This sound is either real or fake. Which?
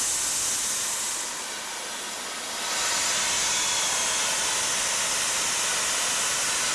real